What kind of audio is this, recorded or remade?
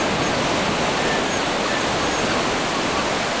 recorded